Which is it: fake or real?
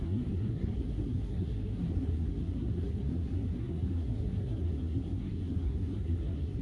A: fake